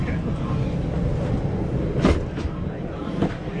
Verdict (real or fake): real